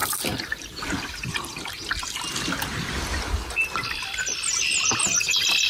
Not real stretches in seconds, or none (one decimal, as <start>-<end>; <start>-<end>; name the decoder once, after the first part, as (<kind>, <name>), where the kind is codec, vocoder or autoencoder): 0.0-2.4 (vocoder, BigVGAN v2); 3.6-4.2